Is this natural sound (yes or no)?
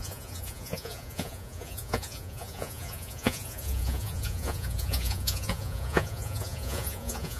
no